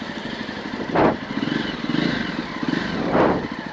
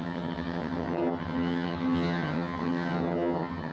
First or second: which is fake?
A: second